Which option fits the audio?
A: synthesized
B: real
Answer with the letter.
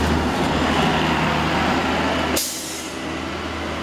B